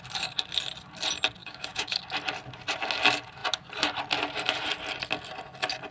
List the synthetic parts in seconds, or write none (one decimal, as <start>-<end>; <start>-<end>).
1.4-2.0